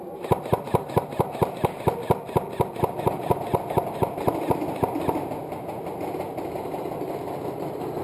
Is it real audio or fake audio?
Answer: real